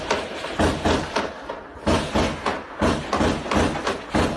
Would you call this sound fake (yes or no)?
no